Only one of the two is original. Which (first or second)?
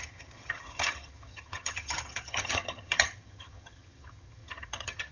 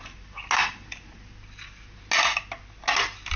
second